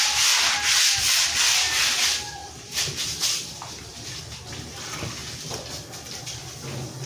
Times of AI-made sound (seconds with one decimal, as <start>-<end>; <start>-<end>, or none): 2.4-4.2